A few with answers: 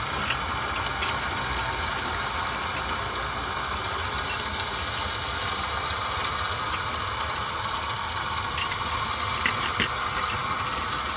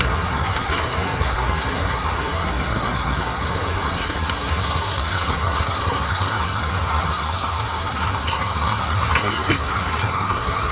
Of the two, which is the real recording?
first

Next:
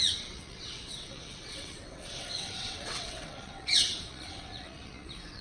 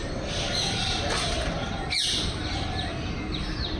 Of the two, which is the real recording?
second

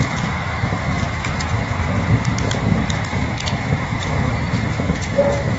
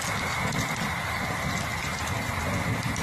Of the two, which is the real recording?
second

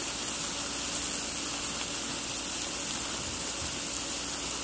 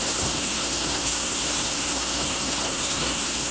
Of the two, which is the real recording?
first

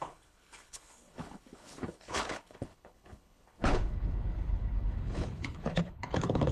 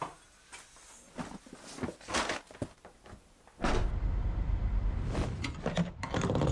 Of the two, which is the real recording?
second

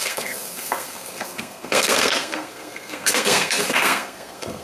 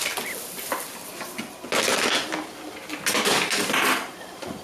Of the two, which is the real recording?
second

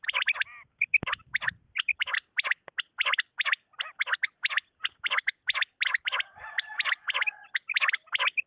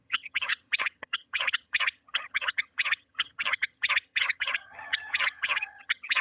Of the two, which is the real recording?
first